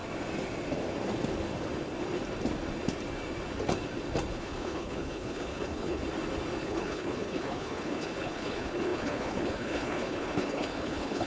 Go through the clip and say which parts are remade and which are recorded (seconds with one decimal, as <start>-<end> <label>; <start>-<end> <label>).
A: 0.0-4.3 recorded; 4.3-6.0 remade; 6.0-6.6 recorded; 6.6-11.3 remade